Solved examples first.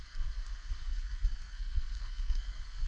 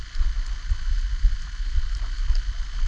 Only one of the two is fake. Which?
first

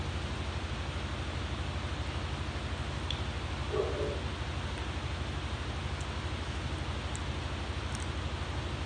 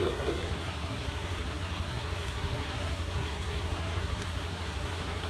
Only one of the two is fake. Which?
second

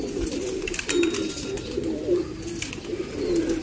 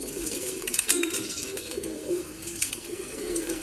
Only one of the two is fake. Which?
second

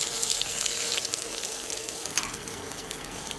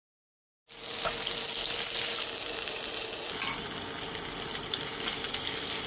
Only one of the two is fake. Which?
first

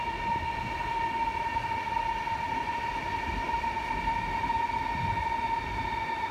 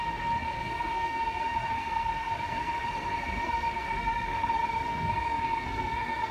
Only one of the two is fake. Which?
second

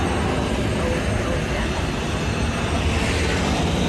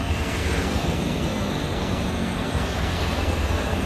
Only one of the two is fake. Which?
second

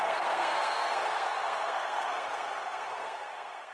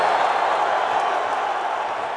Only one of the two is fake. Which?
first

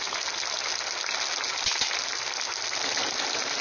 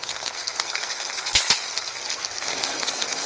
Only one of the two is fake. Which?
second